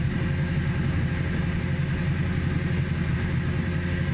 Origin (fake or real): real